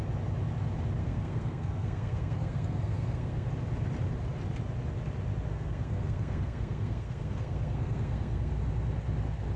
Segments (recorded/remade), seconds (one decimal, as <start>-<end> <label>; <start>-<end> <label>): 0.0-1.0 recorded; 1.0-3.5 remade; 3.5-5.5 recorded; 5.5-8.5 remade; 8.5-9.6 recorded